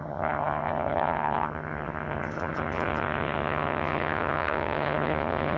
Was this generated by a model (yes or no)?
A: yes